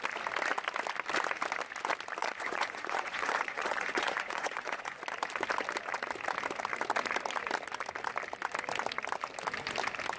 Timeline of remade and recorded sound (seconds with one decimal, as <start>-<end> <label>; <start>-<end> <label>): 0.0-2.2 recorded; 2.2-5.0 remade; 5.0-10.2 recorded